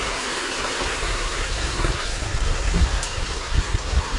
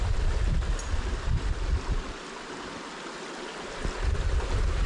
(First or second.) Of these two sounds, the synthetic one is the first